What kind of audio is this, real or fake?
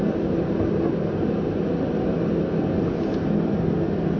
real